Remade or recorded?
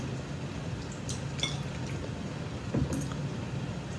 recorded